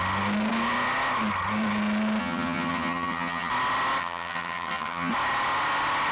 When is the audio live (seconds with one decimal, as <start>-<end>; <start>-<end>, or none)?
0.0-2.2; 3.5-4.0; 5.1-6.1